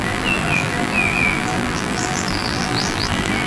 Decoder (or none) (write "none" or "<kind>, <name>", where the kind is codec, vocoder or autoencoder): vocoder, BigVGAN v2